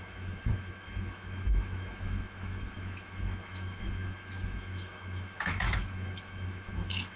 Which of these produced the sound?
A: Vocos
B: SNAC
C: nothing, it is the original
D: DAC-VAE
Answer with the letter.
D